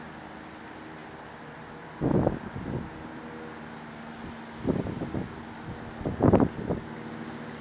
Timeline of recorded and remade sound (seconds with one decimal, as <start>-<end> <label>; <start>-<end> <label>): 0.0-7.6 recorded